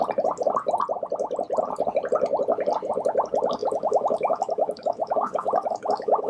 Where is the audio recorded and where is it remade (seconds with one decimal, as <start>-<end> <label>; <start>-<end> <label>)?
0.0-3.6 recorded; 3.6-6.3 remade